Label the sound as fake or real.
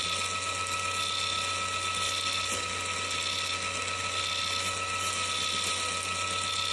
real